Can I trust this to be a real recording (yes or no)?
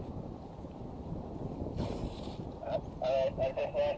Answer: yes